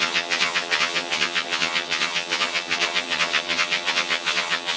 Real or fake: fake